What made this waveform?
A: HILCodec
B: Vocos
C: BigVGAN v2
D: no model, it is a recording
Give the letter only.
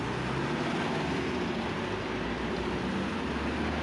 D